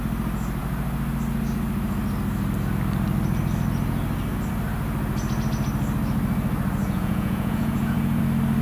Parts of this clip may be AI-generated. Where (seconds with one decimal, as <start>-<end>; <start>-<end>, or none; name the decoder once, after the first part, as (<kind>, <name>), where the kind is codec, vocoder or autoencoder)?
6.8-8.2 (vocoder, Vocos)